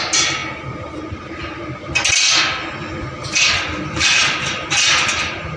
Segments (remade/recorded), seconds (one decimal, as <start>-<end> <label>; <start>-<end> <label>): 0.0-5.6 recorded